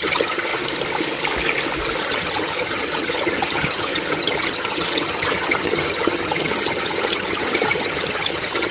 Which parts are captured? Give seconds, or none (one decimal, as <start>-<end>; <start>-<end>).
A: 0.5-2.0